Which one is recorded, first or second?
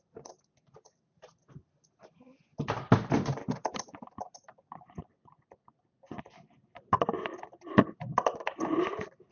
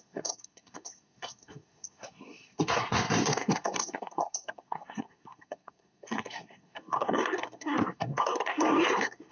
first